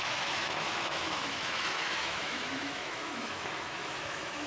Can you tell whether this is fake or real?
fake